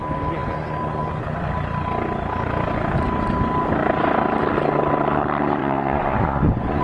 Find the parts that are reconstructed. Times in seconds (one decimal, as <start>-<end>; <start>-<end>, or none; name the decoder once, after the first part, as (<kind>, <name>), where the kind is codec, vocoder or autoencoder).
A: 5.6-6.8 (vocoder, Vocos)